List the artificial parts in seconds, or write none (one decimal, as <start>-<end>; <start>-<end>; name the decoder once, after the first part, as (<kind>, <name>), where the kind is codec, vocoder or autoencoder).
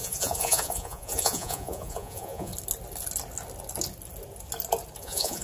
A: 0.0-2.5 (vocoder, Vocos); 5.0-5.4